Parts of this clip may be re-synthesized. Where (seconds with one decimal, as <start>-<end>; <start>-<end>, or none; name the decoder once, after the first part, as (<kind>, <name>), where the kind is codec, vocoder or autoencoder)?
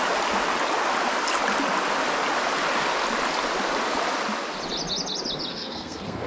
5.5-6.3 (codec, SNAC)